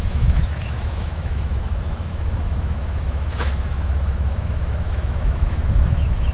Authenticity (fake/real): fake